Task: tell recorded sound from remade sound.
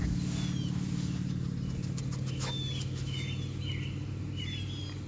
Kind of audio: recorded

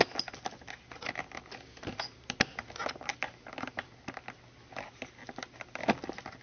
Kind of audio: recorded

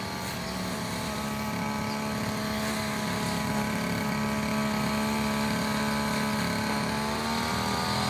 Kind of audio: recorded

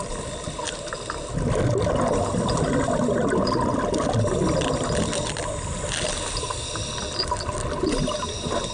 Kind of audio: recorded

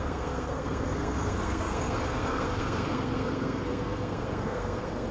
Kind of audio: remade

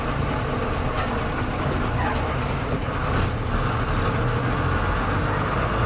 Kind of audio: recorded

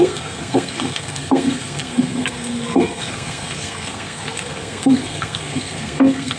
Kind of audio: remade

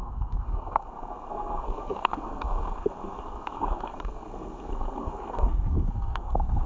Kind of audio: remade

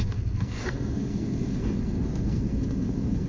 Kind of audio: remade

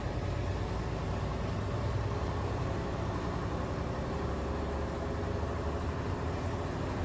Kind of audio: recorded